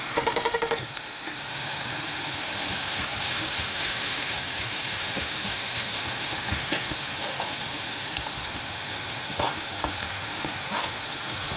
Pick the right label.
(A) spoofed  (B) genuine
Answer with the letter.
A